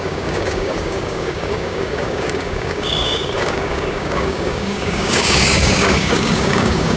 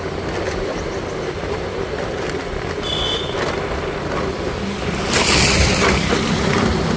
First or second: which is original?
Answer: second